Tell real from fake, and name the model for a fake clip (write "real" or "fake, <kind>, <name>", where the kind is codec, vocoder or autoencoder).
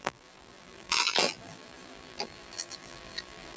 fake, vocoder, BigVGAN v2